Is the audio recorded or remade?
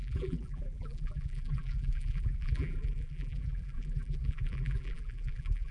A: remade